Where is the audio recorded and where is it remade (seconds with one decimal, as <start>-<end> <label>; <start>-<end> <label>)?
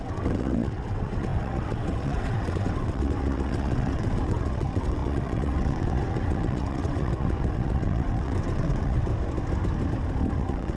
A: 0.0-9.1 remade; 9.1-10.3 recorded; 10.3-10.8 remade